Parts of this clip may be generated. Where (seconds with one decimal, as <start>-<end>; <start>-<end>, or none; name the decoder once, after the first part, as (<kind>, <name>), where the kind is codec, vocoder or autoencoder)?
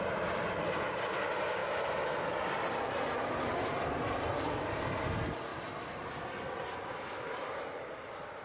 5.5-6.1 (vocoder, BigVGAN v2)